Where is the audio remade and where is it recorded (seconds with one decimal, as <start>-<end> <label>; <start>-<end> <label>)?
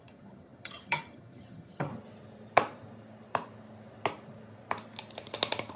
0.0-1.9 remade; 1.9-5.8 recorded